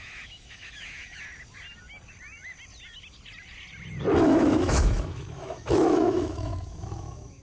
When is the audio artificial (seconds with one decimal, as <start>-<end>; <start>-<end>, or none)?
0.0-1.2; 4.2-7.4